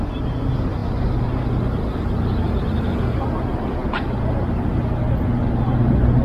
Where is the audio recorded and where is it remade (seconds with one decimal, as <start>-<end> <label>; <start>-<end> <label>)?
0.0-6.2 recorded